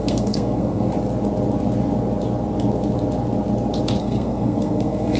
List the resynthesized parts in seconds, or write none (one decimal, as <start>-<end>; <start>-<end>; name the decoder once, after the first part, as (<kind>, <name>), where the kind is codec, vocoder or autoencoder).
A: 0.0-0.9 (codec, SNAC); 4.0-5.2